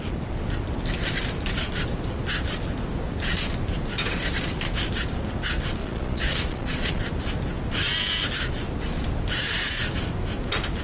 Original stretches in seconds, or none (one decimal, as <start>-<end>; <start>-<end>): 0.0-5.8; 7.0-10.8